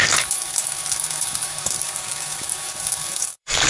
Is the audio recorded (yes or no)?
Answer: no